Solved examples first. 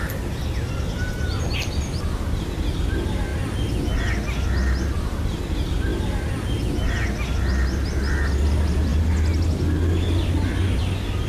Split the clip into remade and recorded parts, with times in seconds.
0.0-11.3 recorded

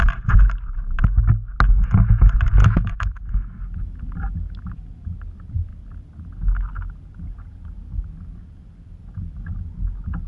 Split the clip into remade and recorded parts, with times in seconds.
0.0-2.6 recorded; 2.6-3.2 remade; 3.2-10.3 recorded

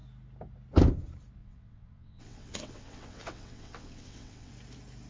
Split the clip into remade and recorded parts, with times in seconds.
0.0-1.4 recorded; 1.4-4.5 remade; 4.5-5.1 recorded

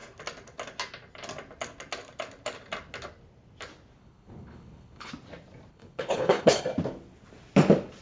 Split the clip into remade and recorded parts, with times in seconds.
0.0-4.0 recorded; 4.0-5.1 remade; 5.1-5.7 recorded; 5.7-6.6 remade; 6.6-8.0 recorded

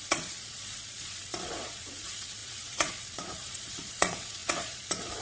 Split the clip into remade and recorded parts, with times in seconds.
0.0-5.2 remade

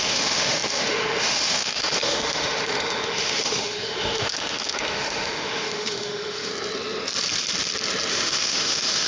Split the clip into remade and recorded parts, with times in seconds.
0.0-6.5 remade; 6.5-8.1 recorded; 8.1-9.1 remade